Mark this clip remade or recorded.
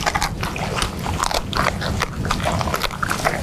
recorded